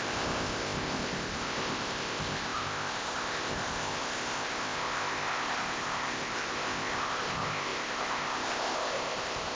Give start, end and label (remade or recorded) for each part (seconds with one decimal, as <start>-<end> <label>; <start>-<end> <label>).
0.0-9.6 remade